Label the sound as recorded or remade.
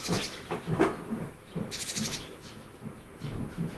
remade